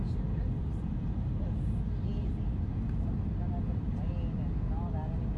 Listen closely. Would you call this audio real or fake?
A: real